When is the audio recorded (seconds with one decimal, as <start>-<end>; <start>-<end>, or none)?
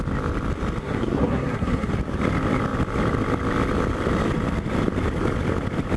0.0-0.8; 1.9-6.0